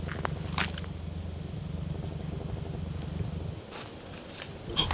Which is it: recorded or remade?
recorded